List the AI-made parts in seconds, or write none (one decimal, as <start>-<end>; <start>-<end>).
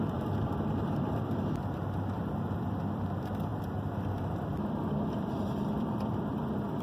0.0-6.8